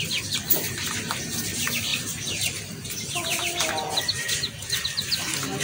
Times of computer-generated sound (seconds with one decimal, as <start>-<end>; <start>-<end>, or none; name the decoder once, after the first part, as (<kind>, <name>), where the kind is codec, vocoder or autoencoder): none